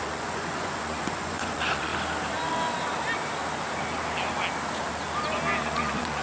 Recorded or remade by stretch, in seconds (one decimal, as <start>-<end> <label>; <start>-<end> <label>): 0.0-1.9 remade; 1.9-5.6 recorded; 5.6-6.2 remade